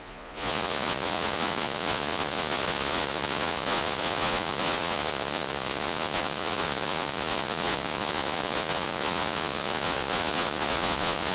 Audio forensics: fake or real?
fake